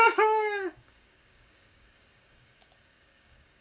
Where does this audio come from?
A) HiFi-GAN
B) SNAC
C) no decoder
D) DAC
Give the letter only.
D